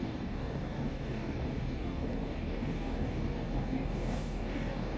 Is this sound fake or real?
fake